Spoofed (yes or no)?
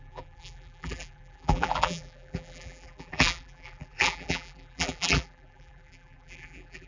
yes